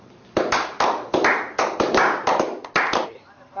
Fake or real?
real